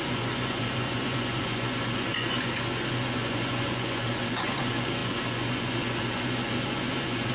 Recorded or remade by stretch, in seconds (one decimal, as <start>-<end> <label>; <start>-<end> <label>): 0.0-7.3 remade